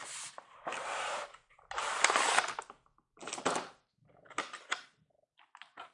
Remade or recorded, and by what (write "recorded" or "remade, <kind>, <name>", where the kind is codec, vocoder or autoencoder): recorded